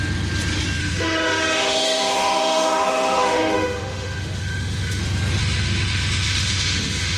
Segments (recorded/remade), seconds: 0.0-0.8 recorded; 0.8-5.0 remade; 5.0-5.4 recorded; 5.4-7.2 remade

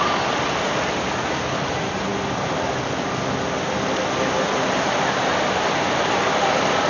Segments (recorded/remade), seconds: 0.0-6.9 recorded